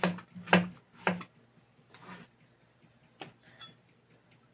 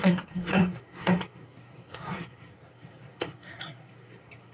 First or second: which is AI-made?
second